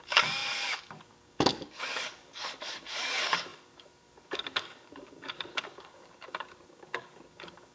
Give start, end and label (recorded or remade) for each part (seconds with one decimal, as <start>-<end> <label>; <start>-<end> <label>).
0.0-7.7 remade

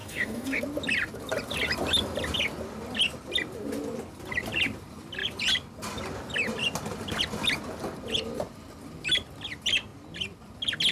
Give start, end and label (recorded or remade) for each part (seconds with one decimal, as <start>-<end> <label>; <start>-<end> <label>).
0.0-0.6 remade; 0.6-10.9 recorded

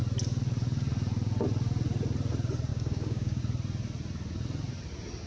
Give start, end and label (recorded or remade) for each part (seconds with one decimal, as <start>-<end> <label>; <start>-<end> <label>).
0.0-2.7 recorded; 2.7-3.4 remade; 3.4-5.3 recorded

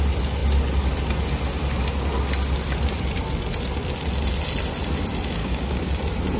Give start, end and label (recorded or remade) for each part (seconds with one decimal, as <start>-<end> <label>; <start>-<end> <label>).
0.0-5.4 recorded; 5.4-5.9 remade; 5.9-6.4 recorded

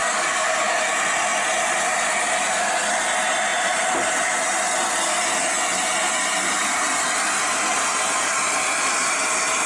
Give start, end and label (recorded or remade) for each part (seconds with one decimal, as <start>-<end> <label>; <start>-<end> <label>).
0.0-0.8 remade; 0.8-9.7 recorded

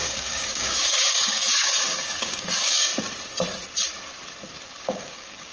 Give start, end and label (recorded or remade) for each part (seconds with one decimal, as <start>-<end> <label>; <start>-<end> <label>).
0.0-2.9 remade; 2.9-4.8 recorded; 4.8-5.5 remade

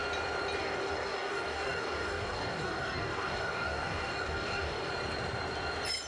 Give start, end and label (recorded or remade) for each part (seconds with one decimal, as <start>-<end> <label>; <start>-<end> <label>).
0.0-0.6 recorded; 0.6-4.9 remade; 4.9-6.1 recorded